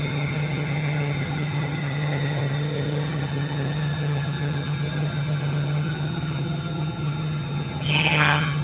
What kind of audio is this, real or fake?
fake